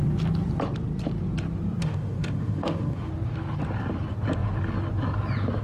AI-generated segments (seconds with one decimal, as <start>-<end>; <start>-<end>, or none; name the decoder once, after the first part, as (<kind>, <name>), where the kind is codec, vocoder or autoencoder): 1.8-3.1 (autoencoder, DAC-VAE)